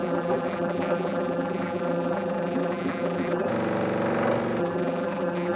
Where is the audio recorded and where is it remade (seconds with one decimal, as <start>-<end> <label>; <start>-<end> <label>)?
0.0-3.5 remade; 3.5-4.6 recorded; 4.6-5.6 remade